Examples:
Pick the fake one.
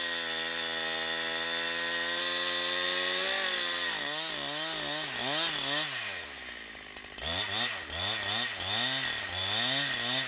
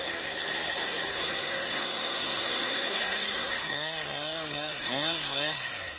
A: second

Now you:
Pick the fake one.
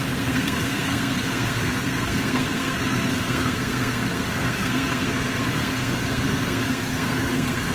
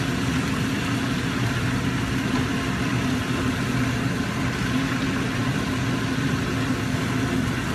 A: first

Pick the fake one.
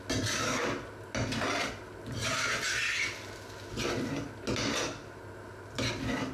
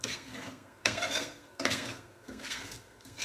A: second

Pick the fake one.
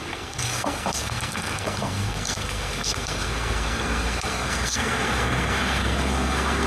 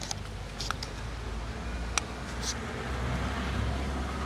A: first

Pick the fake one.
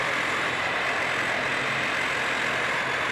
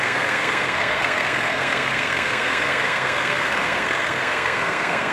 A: second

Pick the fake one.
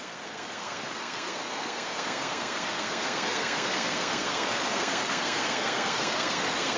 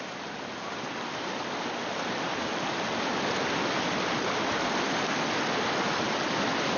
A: first